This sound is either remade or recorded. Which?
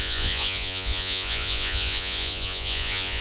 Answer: remade